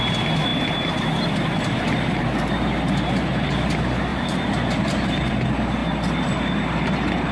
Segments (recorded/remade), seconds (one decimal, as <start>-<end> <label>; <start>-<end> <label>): 0.0-4.1 recorded; 4.1-5.3 remade; 5.3-7.3 recorded